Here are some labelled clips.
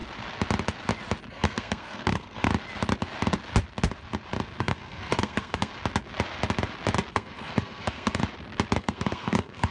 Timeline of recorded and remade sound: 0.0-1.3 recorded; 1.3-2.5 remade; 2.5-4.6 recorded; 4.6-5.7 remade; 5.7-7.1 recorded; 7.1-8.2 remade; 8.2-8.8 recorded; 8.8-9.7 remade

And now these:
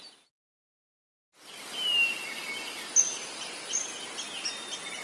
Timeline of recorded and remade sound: 0.0-5.0 recorded

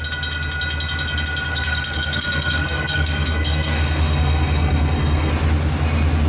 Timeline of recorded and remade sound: 0.0-1.5 recorded; 1.5-5.3 remade; 5.3-6.3 recorded

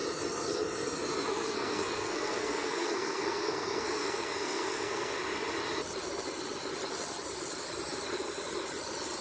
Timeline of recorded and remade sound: 0.0-1.3 recorded; 1.3-5.2 remade; 5.2-9.2 recorded

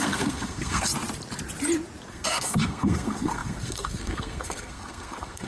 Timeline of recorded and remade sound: 0.0-0.9 remade; 0.9-2.1 recorded; 2.1-5.5 remade

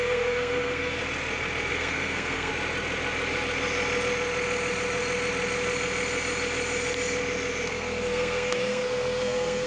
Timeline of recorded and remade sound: 0.0-1.0 remade; 1.0-1.7 recorded; 1.7-2.5 remade; 2.5-7.7 recorded; 7.7-9.7 remade